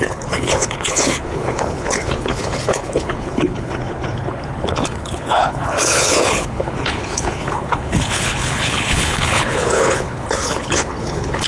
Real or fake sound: fake